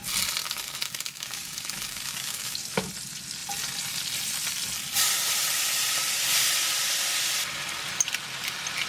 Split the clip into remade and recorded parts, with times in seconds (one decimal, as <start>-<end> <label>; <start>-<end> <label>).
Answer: 0.0-0.4 recorded; 0.4-2.9 remade; 2.9-8.9 recorded